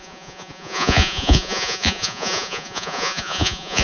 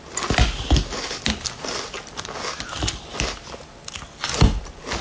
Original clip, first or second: second